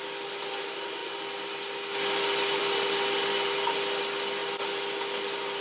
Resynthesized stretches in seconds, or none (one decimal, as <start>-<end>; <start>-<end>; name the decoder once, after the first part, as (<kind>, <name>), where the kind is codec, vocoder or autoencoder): none